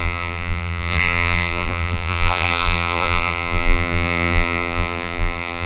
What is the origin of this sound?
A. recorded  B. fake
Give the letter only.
B